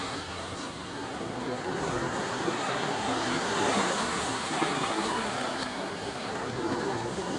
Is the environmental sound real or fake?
fake